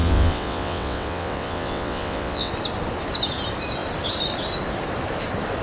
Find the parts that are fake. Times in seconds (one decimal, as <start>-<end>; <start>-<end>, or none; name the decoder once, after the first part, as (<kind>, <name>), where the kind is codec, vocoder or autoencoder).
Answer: 0.0-2.5 (vocoder, WaveNeXt)